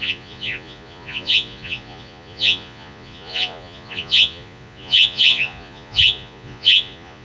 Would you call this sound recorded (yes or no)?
no